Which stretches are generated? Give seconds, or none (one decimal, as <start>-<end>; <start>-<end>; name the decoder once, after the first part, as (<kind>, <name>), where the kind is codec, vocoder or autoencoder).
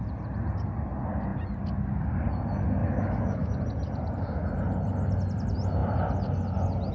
2.8-3.5 (autoencoder, DAC-VAE)